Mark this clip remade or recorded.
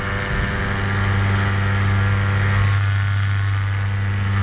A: recorded